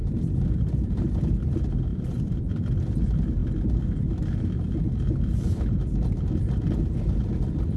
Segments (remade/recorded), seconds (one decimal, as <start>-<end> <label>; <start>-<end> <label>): 0.0-1.9 recorded; 1.9-2.5 remade; 2.5-7.8 recorded